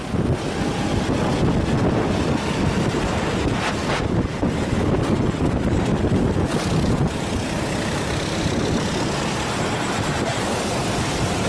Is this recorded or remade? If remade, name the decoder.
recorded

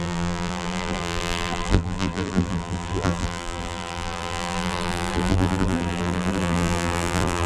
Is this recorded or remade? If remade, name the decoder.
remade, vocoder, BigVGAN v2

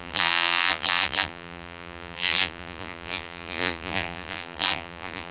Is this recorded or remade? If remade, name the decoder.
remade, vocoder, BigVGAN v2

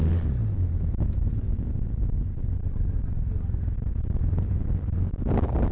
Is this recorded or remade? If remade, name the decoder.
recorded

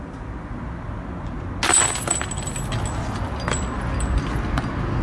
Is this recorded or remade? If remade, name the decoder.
recorded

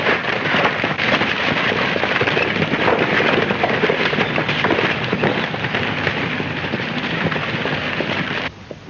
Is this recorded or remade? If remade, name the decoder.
remade, vocoder, BigVGAN v2